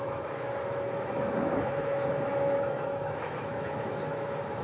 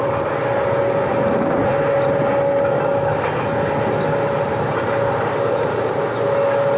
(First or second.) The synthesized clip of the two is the first